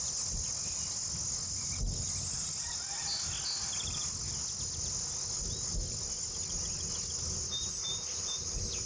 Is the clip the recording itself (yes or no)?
yes